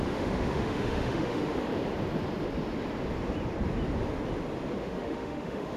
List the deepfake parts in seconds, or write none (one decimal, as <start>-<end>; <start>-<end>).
0.0-1.7; 4.8-5.8